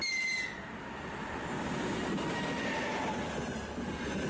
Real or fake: real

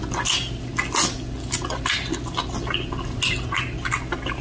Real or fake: real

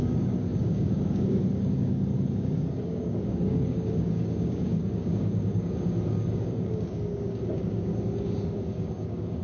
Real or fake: fake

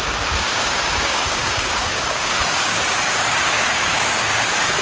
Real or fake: fake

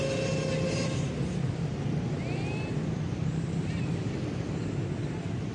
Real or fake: real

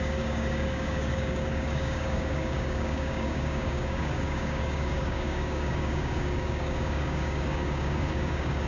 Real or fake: fake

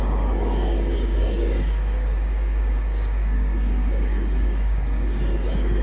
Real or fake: fake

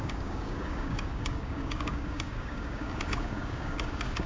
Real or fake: fake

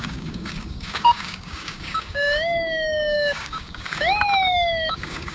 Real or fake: fake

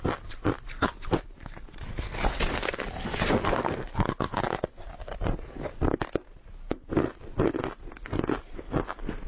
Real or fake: real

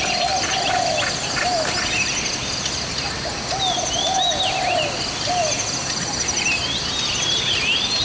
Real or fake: real